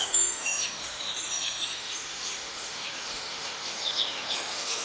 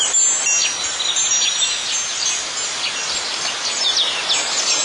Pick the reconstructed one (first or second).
first